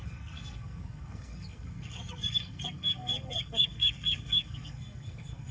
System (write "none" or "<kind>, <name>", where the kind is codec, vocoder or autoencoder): codec, SNAC